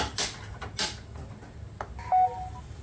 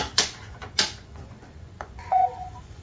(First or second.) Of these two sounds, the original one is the first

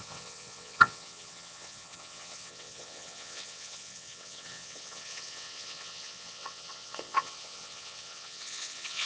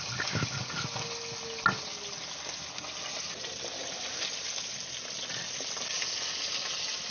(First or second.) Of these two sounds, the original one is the second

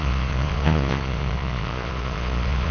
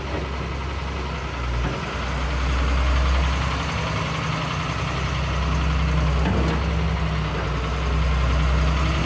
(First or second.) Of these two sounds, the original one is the second